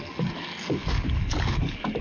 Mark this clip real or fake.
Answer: fake